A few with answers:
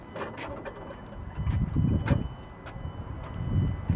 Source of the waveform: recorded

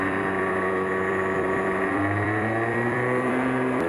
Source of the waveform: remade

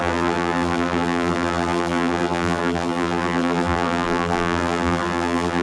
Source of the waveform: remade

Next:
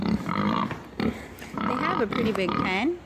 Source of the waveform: recorded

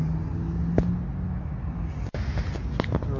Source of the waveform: recorded